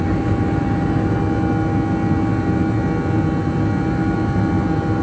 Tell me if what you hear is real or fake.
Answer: real